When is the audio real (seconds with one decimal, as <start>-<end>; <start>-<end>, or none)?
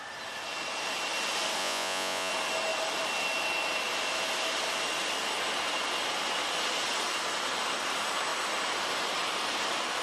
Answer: 0.0-1.6; 2.3-10.0